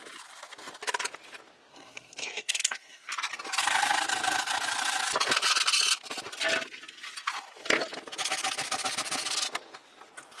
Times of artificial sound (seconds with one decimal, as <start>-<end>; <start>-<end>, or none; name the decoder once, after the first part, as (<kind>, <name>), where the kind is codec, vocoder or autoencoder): 1.7-3.1 (codec, SNAC)